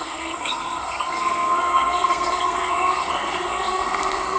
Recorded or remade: remade